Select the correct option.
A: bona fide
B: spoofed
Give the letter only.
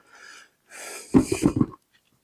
A